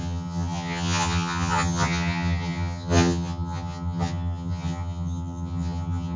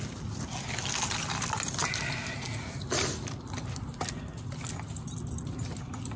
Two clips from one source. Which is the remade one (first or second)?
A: first